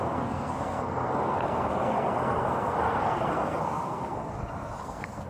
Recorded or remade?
remade